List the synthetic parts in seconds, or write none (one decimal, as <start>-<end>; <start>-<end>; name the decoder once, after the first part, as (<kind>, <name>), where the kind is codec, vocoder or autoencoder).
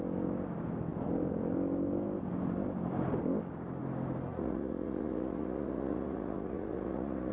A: 4.3-7.3 (vocoder, Vocos)